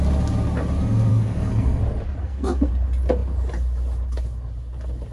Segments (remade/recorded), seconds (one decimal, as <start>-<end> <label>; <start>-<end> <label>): 0.0-1.1 recorded; 1.1-1.8 remade; 1.8-2.2 recorded; 2.2-2.7 remade; 2.7-5.1 recorded